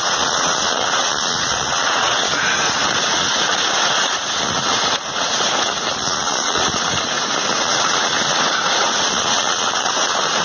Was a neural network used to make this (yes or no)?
yes